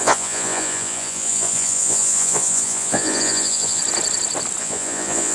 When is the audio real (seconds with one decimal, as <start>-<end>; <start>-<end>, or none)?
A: 3.8-4.6